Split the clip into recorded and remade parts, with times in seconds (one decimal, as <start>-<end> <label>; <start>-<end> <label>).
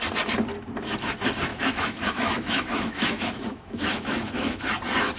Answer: 0.0-1.5 recorded; 1.5-4.6 remade; 4.6-5.2 recorded